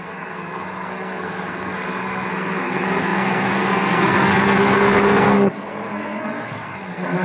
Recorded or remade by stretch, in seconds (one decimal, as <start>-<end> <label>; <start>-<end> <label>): 0.0-7.2 remade